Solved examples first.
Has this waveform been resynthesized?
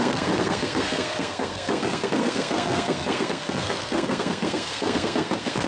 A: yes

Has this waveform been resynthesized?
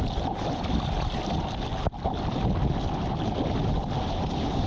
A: no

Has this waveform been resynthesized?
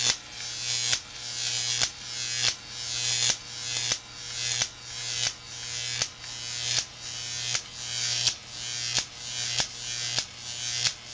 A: no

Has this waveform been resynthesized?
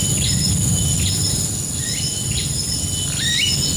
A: no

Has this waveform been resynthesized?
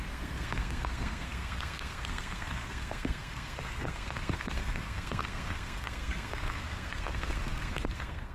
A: yes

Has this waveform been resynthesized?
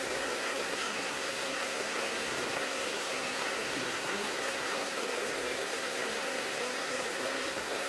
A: yes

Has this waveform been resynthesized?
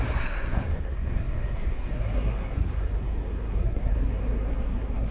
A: yes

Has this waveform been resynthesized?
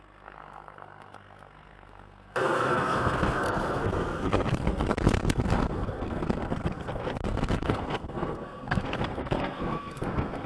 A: yes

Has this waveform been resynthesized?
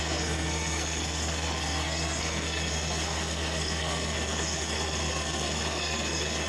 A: yes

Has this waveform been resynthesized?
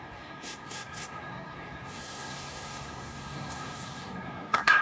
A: yes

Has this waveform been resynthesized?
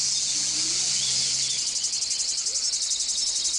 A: no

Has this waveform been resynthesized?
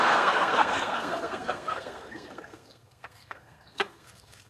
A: yes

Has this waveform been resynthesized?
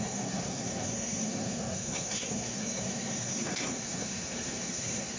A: yes